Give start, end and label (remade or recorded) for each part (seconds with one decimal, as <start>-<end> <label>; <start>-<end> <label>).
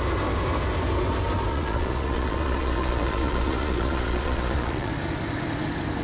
0.0-1.5 recorded; 1.5-4.9 remade; 4.9-6.0 recorded